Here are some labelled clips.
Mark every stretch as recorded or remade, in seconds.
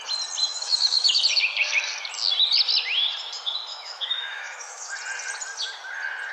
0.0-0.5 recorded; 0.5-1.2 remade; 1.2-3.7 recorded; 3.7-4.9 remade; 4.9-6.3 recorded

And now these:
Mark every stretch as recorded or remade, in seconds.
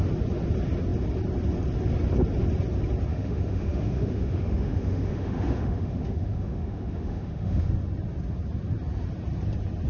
0.0-3.1 recorded; 3.1-7.7 remade; 7.7-9.9 recorded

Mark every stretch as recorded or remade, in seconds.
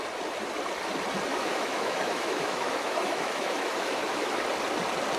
0.0-1.3 recorded; 1.3-4.4 remade; 4.4-5.2 recorded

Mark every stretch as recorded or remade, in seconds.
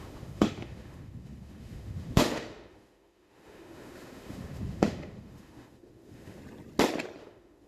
0.0-6.4 remade; 6.4-7.2 recorded; 7.2-7.7 remade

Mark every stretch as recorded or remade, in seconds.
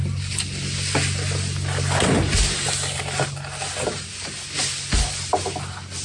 0.0-6.0 recorded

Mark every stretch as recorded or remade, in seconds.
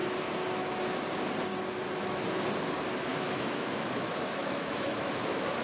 0.0-3.1 recorded; 3.1-5.1 remade; 5.1-5.6 recorded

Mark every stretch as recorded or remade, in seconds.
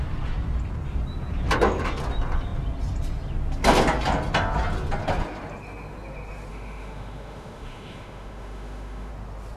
0.0-6.5 recorded; 6.5-9.1 remade; 9.1-9.6 recorded